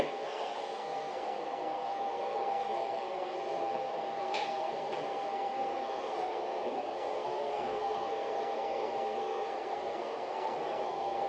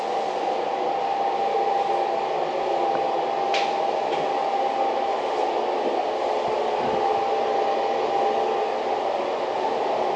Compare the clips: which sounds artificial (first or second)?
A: first